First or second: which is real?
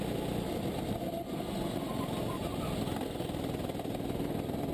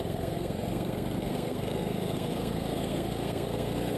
first